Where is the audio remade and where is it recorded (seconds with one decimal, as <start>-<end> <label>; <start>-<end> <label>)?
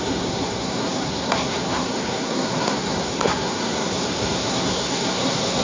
0.0-5.6 remade